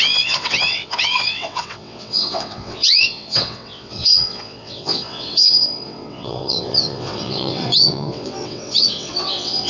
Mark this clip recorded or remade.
remade